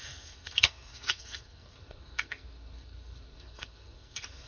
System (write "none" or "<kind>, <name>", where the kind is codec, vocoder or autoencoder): codec, SNAC